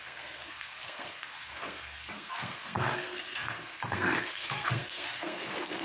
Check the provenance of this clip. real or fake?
fake